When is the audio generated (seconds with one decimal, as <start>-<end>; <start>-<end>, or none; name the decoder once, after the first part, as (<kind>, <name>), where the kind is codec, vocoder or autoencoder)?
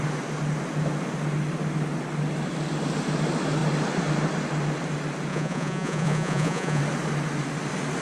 5.3-6.8 (vocoder, Vocos)